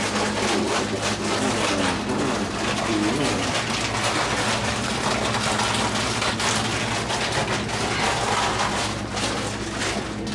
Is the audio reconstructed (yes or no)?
no